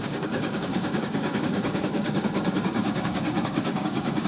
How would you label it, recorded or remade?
remade